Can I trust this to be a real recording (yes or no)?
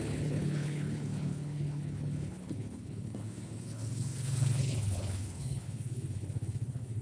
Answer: no